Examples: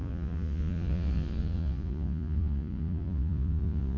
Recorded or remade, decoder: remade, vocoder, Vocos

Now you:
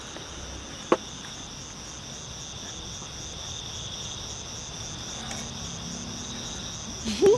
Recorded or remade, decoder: recorded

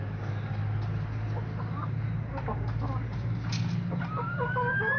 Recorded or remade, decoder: recorded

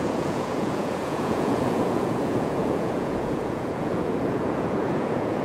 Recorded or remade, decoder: remade, vocoder, Vocos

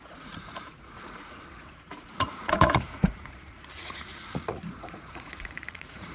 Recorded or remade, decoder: remade, vocoder, Vocos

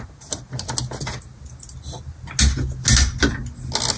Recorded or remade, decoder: recorded